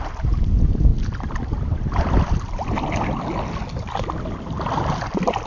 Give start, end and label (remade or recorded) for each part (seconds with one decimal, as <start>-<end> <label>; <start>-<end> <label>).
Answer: 0.0-5.5 recorded